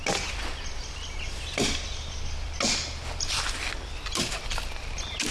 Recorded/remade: recorded